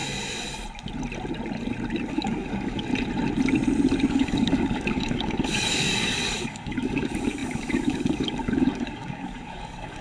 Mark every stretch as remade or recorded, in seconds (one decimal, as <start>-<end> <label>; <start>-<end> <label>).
0.0-2.1 recorded; 2.1-2.9 remade; 2.9-4.1 recorded; 4.1-10.0 remade